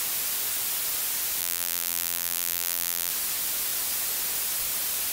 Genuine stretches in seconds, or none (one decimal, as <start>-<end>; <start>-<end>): 0.0-1.4; 3.1-5.1